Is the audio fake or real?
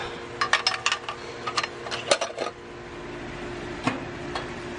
real